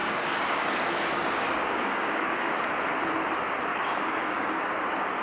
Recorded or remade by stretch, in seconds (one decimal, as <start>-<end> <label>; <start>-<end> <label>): 0.0-2.7 remade; 2.7-3.7 recorded; 3.7-4.7 remade; 4.7-5.2 recorded